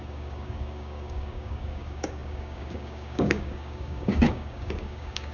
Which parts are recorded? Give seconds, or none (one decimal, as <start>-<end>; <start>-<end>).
none